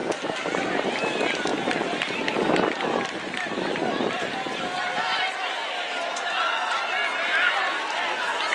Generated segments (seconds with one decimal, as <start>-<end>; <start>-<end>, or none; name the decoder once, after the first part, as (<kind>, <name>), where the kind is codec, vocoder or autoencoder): 0.0-0.9 (vocoder, BigVGAN v2); 1.5-5.3